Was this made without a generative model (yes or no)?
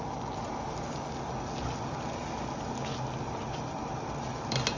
yes